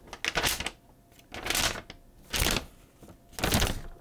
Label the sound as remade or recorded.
recorded